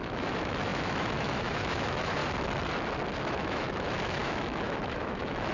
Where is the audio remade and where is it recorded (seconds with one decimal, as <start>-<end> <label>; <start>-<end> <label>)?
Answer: 0.0-2.2 remade; 2.2-3.2 recorded; 3.2-5.5 remade